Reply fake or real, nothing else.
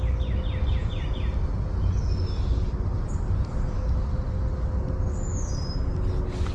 real